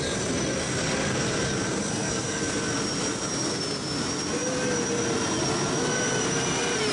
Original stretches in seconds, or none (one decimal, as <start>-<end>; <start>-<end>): 0.0-1.9; 2.4-6.9